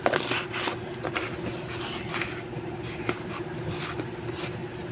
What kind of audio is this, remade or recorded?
recorded